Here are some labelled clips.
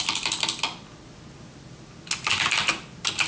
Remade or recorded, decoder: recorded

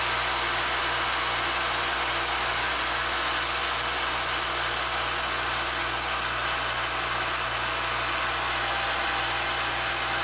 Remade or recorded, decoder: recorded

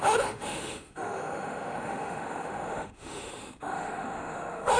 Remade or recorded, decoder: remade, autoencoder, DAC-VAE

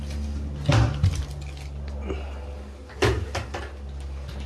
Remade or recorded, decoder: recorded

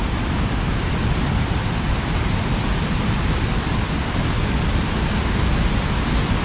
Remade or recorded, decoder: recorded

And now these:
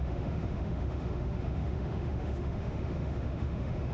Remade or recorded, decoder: remade, autoencoder, DAC-VAE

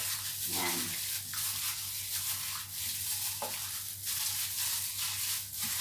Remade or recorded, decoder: recorded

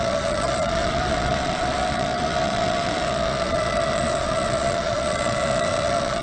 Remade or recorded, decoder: remade, vocoder, Vocos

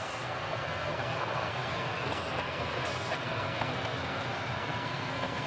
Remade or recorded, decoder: remade, codec, SNAC